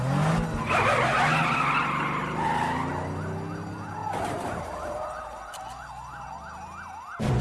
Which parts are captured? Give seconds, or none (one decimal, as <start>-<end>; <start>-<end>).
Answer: 0.0-7.4